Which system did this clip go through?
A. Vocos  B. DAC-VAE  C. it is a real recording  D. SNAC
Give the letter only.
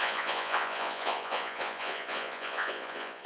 A